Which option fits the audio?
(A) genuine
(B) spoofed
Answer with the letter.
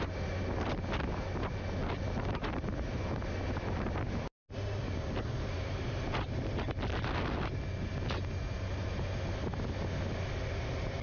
A